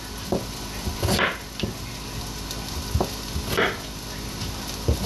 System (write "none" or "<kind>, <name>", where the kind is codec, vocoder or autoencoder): none